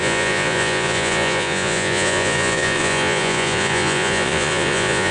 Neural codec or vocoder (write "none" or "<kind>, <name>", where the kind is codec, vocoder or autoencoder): vocoder, Vocos